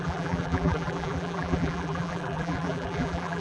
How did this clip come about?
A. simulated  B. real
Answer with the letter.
A